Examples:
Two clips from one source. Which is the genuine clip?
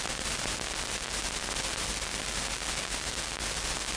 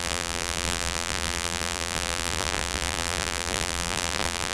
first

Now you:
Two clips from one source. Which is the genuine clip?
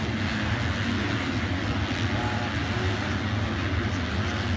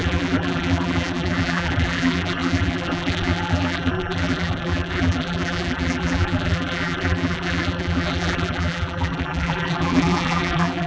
first